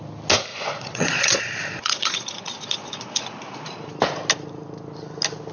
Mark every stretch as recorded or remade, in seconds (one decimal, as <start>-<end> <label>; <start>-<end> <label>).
0.0-0.5 recorded; 0.5-3.2 remade; 3.2-5.5 recorded